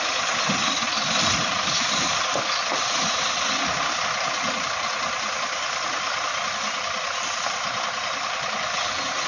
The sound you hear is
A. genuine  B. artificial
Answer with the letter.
A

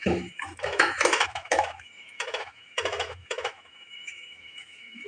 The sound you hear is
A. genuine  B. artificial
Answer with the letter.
B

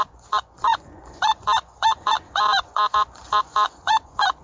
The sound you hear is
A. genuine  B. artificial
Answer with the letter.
B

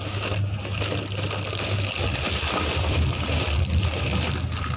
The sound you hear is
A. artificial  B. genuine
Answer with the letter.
B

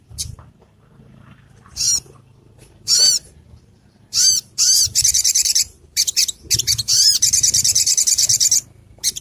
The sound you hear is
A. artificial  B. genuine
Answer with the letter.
A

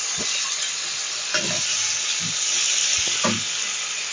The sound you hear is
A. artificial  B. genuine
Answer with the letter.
B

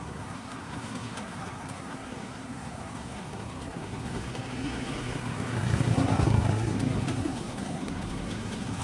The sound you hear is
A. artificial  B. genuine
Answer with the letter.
A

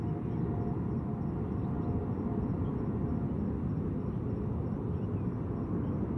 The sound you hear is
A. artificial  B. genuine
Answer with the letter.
B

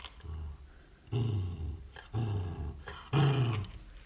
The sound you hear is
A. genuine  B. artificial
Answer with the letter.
A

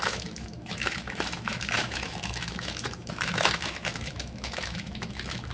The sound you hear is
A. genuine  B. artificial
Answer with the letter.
B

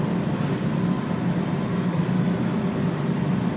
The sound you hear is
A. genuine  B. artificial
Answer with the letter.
A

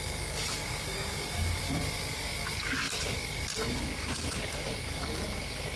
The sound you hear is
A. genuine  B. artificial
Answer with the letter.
B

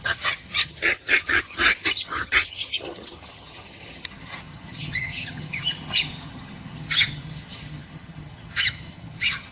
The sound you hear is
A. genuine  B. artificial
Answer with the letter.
B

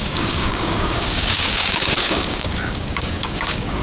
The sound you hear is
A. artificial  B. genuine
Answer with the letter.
A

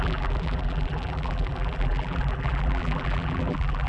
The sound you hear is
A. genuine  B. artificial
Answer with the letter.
B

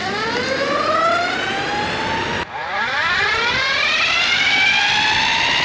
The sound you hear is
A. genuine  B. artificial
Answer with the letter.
A